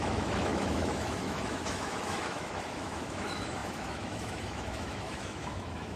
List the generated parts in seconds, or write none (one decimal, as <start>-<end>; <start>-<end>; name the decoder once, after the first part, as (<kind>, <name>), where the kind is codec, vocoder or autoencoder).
0.0-6.0 (autoencoder, DAC-VAE)